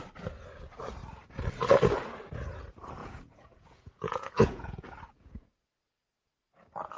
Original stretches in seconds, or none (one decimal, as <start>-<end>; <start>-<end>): 0.0-3.0; 6.3-7.0